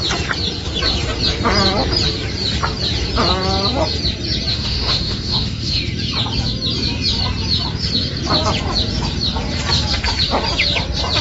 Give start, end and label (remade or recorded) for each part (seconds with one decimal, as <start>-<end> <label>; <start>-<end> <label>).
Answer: 0.0-4.5 recorded; 4.5-5.9 remade; 5.9-11.2 recorded